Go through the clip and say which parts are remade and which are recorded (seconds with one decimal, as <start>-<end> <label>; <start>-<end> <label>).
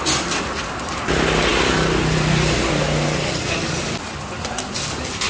0.0-5.3 recorded